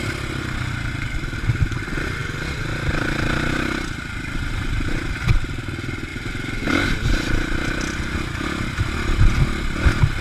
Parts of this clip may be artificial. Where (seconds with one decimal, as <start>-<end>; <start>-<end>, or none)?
6.1-7.3